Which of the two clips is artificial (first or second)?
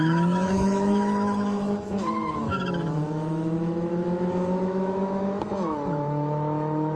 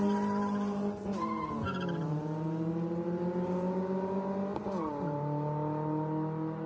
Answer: first